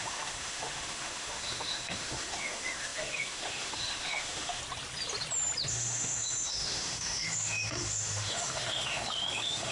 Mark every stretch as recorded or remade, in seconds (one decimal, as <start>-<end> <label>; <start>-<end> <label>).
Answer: 0.0-4.6 remade; 4.6-5.7 recorded; 5.7-9.7 remade